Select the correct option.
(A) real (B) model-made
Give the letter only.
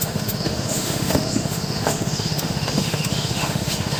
B